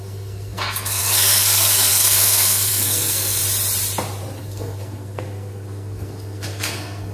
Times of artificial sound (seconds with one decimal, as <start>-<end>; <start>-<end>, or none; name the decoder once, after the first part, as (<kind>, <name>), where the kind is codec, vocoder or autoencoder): 0.0-3.4 (codec, SNAC); 4.4-7.1